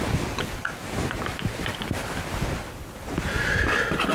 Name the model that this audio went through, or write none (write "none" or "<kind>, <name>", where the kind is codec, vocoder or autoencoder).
none